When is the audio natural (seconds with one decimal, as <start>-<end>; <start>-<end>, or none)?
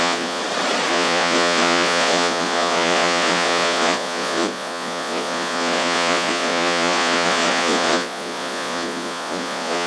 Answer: 0.4-0.9